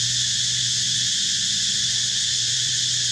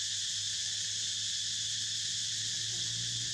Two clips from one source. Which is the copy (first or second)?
first